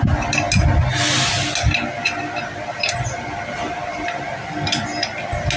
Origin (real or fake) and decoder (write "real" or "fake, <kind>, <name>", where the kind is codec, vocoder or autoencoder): real